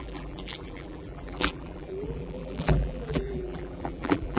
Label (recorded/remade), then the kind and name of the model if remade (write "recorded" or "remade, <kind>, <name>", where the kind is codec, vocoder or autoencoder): remade, vocoder, BigVGAN v2